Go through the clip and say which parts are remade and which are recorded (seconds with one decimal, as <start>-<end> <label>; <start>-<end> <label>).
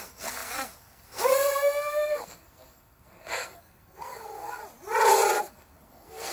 0.0-4.6 remade; 4.6-5.4 recorded; 5.4-6.3 remade